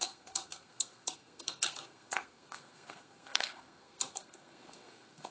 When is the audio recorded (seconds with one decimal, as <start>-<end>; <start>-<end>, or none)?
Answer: none